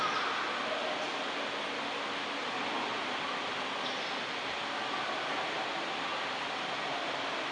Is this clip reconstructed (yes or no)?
no